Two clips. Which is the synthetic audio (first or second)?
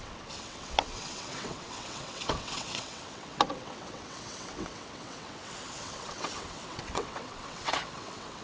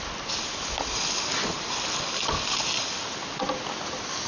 first